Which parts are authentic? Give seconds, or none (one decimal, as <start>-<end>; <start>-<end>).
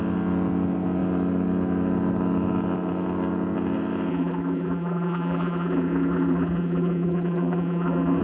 0.0-4.1